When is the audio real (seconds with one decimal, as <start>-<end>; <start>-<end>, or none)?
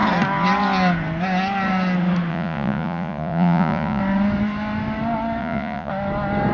0.0-2.3; 4.0-5.4; 5.9-6.5